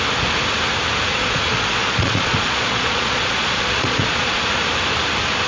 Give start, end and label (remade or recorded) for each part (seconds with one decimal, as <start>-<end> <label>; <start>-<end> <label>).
0.0-1.1 recorded; 1.1-4.4 remade; 4.4-5.5 recorded